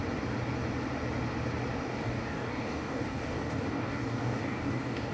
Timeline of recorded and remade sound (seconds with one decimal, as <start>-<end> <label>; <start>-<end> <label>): 0.0-1.7 recorded; 1.7-5.1 remade